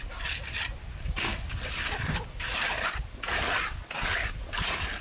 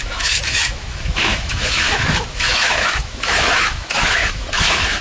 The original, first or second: first